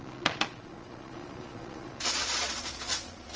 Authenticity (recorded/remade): remade